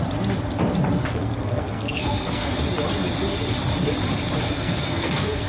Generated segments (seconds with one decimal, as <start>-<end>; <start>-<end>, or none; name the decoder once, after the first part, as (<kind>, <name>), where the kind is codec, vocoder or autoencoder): 1.1-2.6 (codec, SNAC); 4.4-5.5